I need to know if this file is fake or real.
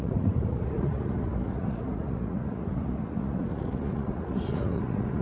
fake